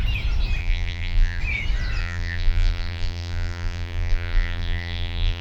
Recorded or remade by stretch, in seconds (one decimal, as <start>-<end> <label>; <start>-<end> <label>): 0.0-0.6 recorded; 0.6-1.4 remade; 1.4-2.0 recorded; 2.0-5.4 remade